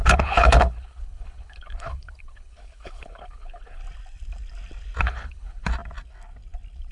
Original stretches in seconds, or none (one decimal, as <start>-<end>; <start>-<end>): 3.8-5.0; 5.7-6.9